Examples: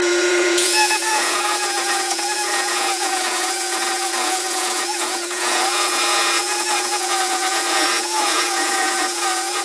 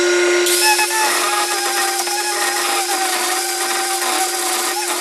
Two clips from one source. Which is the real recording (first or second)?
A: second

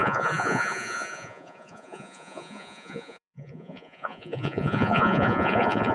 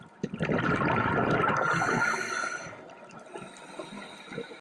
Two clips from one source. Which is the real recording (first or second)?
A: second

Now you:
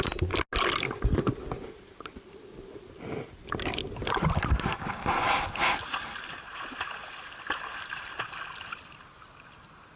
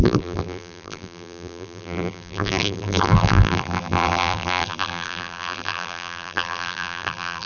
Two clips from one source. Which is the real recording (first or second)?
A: first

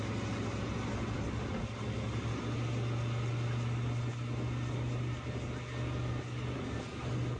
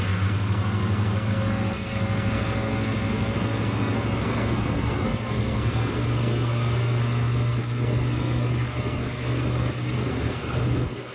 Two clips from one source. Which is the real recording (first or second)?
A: first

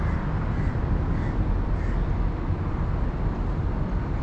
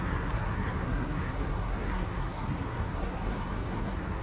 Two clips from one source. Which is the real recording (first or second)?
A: first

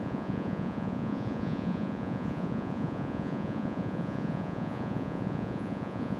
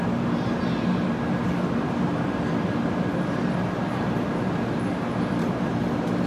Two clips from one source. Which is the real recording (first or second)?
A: second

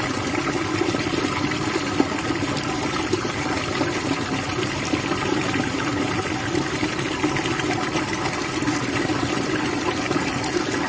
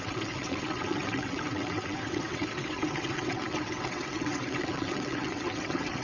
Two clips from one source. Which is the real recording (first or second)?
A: first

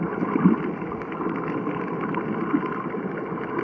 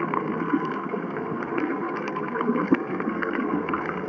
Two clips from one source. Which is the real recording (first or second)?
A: first